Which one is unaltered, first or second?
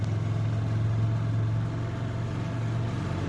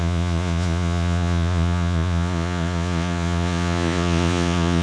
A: first